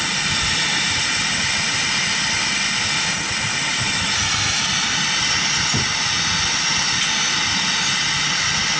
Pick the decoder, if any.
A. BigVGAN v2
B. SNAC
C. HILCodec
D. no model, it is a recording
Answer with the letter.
D